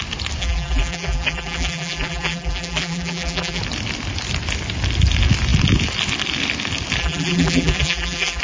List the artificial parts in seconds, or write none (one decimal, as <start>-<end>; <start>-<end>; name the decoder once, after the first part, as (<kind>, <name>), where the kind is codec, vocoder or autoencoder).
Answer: 0.4-3.6 (vocoder, BigVGAN v2); 7.0-8.4

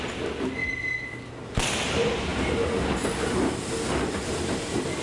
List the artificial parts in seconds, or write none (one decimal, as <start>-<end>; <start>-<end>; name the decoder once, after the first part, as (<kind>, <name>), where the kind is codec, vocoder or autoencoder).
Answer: 0.6-1.2 (vocoder, BigVGAN v2)

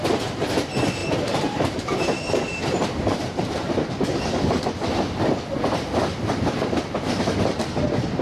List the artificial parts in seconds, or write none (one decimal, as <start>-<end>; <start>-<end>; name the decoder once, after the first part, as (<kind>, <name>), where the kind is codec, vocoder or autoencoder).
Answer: 1.0-3.7 (vocoder, BigVGAN v2)

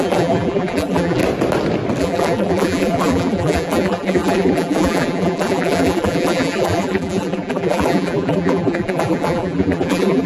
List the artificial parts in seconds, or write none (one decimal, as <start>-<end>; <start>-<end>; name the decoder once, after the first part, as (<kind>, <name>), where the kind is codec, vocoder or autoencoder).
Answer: 0.0-1.2 (vocoder, BigVGAN v2); 2.0-10.3

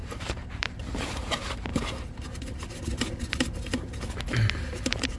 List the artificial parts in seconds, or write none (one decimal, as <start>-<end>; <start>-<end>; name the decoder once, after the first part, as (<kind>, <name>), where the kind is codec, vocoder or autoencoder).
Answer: 0.0-1.7 (vocoder, BigVGAN v2); 4.2-5.2

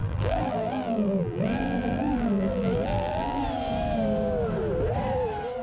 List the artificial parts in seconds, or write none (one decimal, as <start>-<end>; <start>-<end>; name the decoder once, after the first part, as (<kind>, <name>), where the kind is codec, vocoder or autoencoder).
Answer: 0.0-3.4 (vocoder, BigVGAN v2)

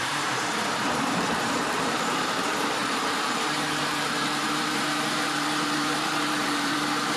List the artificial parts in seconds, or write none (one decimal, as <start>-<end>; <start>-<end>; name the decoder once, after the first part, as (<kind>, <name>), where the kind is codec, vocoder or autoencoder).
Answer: 0.0-7.2 (vocoder, BigVGAN v2)